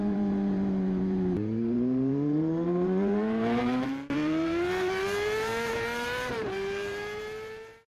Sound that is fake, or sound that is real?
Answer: fake